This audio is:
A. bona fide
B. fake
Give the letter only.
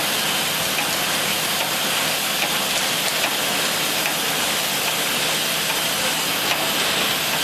A